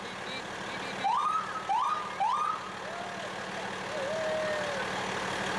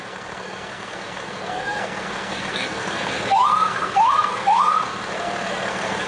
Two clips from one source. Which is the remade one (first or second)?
second